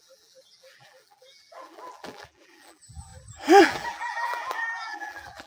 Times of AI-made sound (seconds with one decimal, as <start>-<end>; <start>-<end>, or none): 0.0-3.1; 3.6-5.5